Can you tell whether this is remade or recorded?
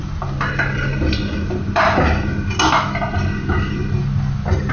recorded